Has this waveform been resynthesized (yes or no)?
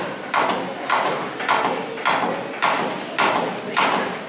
no